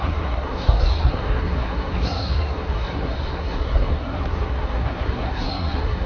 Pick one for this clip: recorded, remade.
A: remade